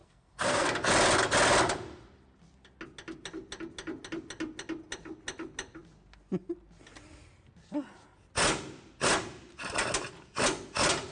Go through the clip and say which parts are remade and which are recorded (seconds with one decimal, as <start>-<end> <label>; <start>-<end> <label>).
0.0-0.7 remade; 0.7-11.1 recorded